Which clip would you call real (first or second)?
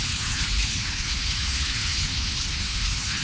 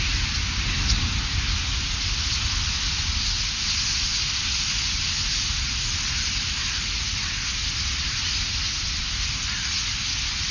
second